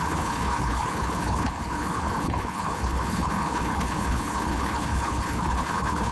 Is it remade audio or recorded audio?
remade